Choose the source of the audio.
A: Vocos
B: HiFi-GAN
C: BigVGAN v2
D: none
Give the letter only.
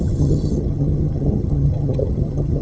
B